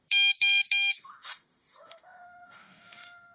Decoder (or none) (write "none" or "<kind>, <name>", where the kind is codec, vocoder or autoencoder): autoencoder, DAC-VAE